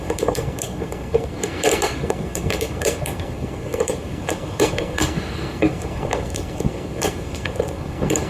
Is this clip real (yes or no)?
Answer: no